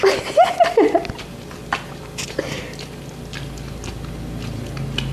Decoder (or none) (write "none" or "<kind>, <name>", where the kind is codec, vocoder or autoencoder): none